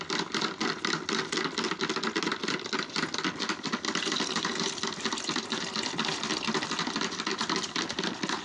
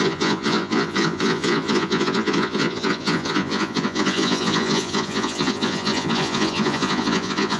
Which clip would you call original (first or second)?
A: first